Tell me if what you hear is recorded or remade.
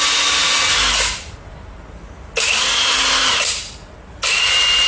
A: recorded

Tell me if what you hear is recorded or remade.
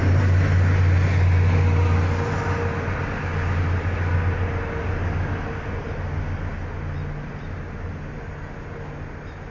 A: recorded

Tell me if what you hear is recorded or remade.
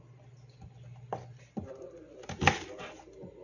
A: recorded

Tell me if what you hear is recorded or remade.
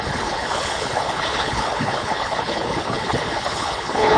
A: remade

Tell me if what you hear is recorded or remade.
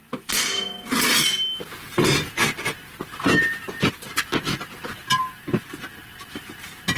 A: recorded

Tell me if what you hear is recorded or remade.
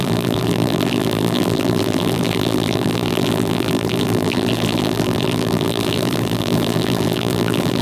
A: remade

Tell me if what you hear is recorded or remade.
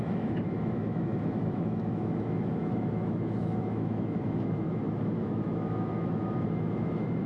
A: remade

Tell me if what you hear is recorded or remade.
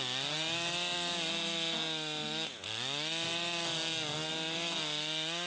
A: recorded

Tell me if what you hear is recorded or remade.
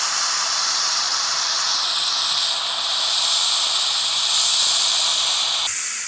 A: remade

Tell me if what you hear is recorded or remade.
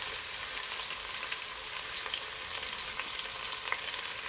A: recorded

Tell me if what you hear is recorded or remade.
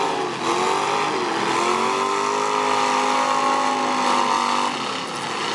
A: recorded